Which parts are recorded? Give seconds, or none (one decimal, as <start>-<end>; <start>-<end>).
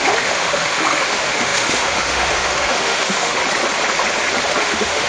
3.4-4.5